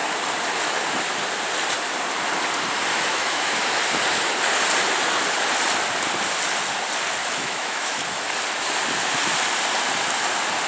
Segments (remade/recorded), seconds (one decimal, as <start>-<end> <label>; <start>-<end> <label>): 0.0-2.9 recorded; 2.9-3.8 remade; 3.8-7.2 recorded; 7.2-8.2 remade; 8.2-10.7 recorded